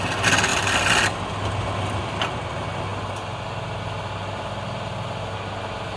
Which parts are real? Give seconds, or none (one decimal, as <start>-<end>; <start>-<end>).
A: 0.0-6.0

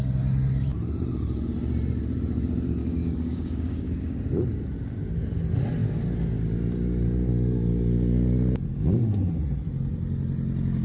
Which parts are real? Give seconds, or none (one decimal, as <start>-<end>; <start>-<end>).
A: 0.0-2.8; 4.2-10.8

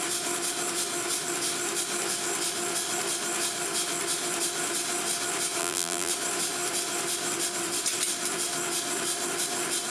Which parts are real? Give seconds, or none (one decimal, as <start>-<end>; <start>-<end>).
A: 0.0-5.6; 6.1-9.9

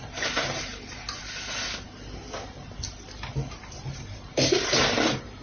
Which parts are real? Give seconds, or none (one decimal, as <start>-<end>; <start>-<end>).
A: 0.7-3.5

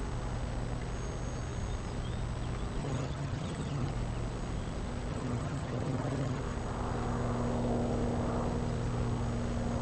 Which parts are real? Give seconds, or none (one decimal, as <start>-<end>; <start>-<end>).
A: 0.0-2.8; 3.9-5.1; 6.4-9.8

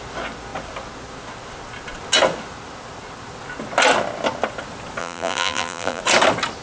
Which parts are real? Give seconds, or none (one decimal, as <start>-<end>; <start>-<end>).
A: 0.0-5.0; 6.0-6.6

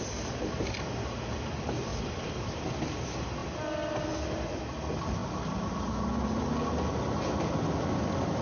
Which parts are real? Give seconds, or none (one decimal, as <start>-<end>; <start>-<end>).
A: 0.0-1.9; 2.7-3.4; 4.6-5.2; 5.7-8.4

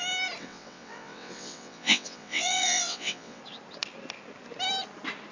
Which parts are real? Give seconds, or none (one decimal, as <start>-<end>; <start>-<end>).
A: 0.0-0.4; 3.4-5.3